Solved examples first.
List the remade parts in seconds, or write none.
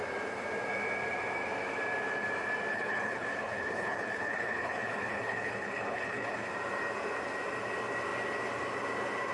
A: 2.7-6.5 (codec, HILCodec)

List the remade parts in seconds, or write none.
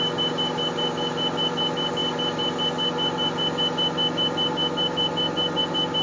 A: none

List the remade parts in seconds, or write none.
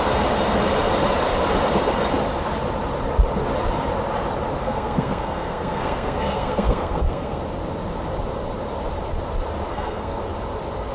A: 4.6-7.4 (codec, SNAC); 9.7-10.2